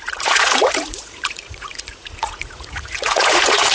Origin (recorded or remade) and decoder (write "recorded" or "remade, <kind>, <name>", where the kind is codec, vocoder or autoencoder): remade, vocoder, Vocos